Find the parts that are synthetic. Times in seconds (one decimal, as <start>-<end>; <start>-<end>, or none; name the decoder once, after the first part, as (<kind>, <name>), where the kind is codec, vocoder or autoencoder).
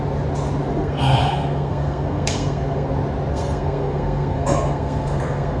0.7-2.9 (codec, SNAC); 3.3-5.6